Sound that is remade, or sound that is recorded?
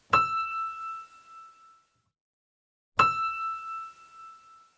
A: recorded